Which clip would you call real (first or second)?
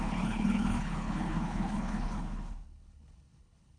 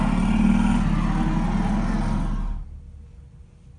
second